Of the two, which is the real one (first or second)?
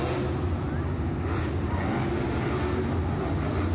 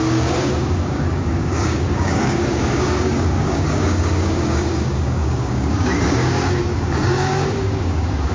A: first